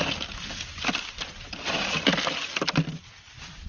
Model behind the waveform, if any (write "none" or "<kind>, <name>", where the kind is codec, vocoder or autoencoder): none